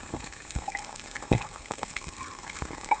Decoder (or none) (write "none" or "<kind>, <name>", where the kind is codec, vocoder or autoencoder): codec, SNAC